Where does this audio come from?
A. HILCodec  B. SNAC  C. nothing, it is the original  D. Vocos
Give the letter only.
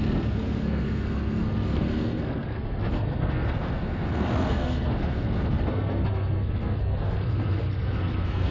B